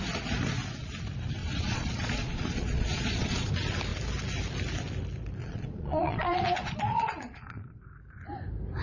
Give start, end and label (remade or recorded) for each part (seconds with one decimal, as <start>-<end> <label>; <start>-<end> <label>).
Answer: 0.0-1.4 recorded; 1.4-3.5 remade; 3.5-5.4 recorded; 5.4-7.8 remade; 7.8-8.8 recorded